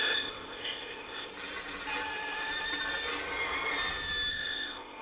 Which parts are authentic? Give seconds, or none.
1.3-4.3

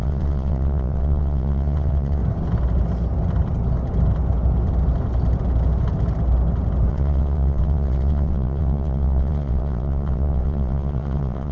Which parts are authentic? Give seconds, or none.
2.2-6.9

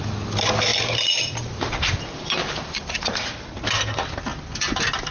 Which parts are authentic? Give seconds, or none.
0.0-0.7; 2.0-2.4; 3.6-5.1